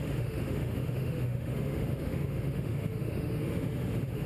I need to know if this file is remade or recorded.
remade